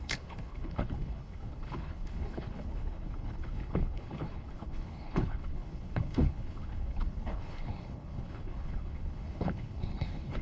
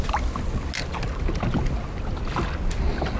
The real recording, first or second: second